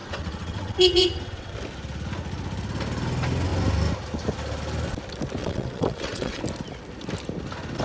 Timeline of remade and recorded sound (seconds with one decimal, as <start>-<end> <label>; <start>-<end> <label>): 0.0-1.5 remade; 1.5-5.4 recorded; 5.4-6.4 remade; 6.4-7.8 recorded